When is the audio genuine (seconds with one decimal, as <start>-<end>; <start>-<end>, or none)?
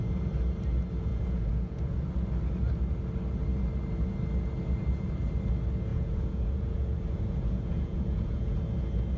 0.0-1.1; 2.0-5.9; 8.6-9.2